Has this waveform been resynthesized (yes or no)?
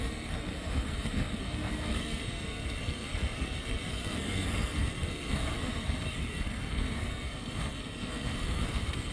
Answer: yes